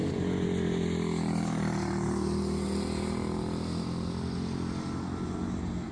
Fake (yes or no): no